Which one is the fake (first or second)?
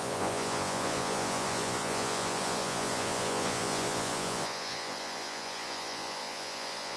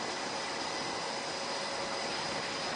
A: first